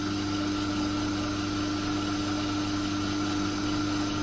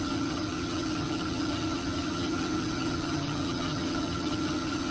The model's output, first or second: second